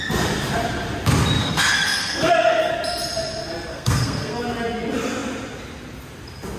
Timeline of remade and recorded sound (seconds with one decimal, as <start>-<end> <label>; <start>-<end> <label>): 0.0-1.4 recorded; 1.4-2.7 remade; 2.7-3.7 recorded; 3.7-4.4 remade; 4.4-6.6 recorded